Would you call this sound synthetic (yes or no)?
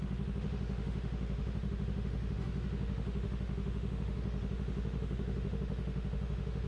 yes